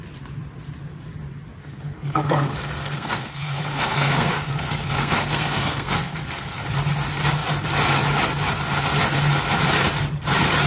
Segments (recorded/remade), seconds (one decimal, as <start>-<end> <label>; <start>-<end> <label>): 0.0-1.6 recorded; 1.6-6.6 remade; 6.6-10.7 recorded